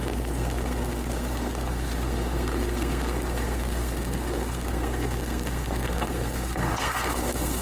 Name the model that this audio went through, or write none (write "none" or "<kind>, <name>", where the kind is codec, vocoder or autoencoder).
codec, SNAC